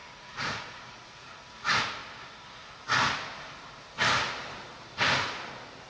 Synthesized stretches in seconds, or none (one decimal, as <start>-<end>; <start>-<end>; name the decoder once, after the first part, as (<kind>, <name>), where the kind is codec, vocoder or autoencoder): 0.0-1.3 (vocoder, Vocos)